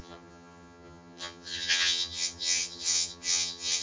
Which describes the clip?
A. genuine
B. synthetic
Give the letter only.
B